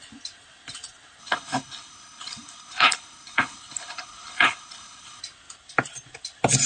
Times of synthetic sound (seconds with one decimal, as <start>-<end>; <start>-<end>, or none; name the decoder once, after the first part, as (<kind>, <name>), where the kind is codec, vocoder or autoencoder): 1.2-5.2 (codec, HILCodec)